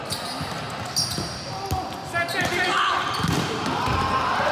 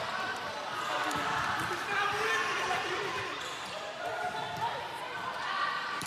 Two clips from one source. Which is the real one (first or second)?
first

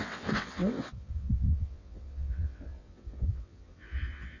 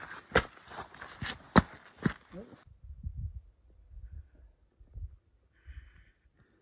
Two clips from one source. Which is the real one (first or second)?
second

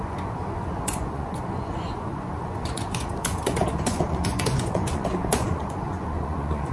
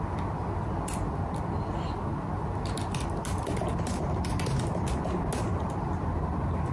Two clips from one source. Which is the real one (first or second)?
second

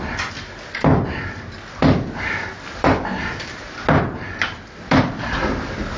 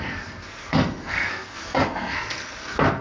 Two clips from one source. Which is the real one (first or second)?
first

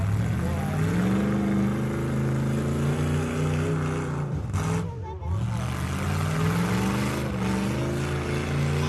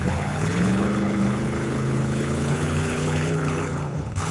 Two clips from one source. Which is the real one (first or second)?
first